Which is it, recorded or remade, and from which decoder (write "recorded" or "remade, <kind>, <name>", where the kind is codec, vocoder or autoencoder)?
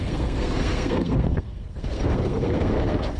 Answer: remade, codec, SNAC